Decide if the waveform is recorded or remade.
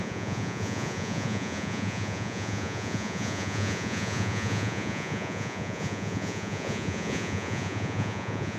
remade